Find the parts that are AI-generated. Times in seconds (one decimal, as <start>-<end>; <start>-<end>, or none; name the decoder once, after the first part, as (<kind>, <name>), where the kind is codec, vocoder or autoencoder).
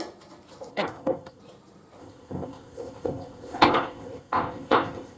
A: 0.7-1.4 (codec, ZipCodec); 2.0-5.2